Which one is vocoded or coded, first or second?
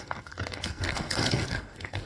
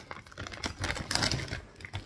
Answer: first